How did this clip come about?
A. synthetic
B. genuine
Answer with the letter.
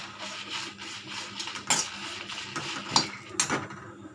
B